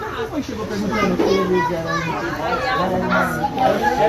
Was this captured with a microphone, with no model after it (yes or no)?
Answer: yes